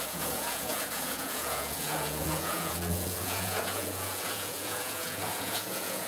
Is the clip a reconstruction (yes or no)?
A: yes